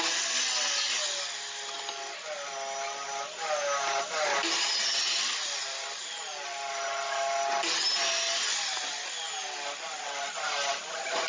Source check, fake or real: real